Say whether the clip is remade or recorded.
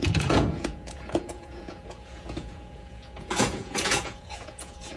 remade